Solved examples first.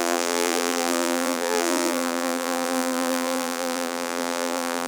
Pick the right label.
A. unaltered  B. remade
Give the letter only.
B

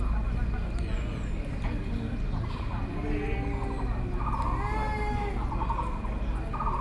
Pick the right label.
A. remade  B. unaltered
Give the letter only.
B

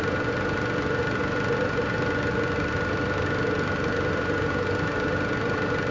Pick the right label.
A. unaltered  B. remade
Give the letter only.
A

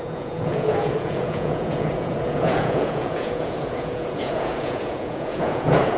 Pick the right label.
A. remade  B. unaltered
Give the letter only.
A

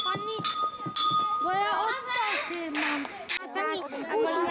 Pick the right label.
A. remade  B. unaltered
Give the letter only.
B